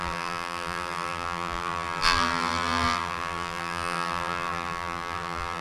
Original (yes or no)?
no